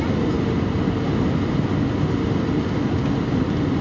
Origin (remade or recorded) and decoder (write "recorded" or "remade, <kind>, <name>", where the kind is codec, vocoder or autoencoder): recorded